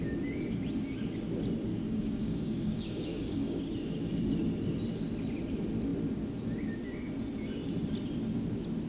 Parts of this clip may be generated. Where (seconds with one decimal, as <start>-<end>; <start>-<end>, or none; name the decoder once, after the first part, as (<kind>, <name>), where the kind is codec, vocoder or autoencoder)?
1.7-3.6 (codec, DAC)